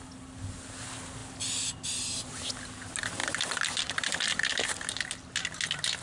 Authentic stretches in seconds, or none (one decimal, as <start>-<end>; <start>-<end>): 0.0-3.2; 4.6-6.0